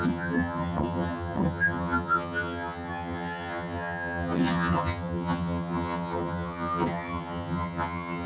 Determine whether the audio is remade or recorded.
remade